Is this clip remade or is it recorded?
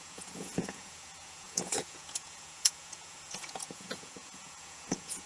remade